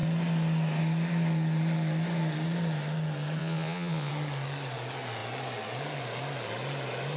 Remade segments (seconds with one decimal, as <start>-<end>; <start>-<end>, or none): 3.4-4.1